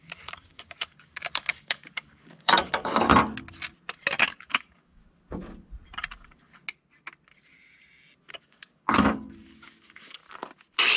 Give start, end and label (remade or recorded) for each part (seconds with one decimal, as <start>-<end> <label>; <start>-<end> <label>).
0.0-3.1 remade; 3.1-4.2 recorded; 4.2-5.0 remade; 5.0-8.3 recorded; 8.3-10.2 remade; 10.2-11.0 recorded